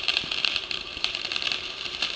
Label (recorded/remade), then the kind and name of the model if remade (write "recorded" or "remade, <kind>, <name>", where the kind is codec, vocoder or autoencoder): remade, vocoder, BigVGAN v2